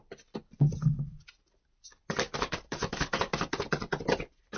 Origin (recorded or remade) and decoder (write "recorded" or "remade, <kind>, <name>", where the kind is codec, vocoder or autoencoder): remade, vocoder, BigVGAN v2